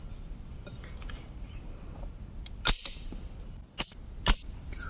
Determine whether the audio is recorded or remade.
recorded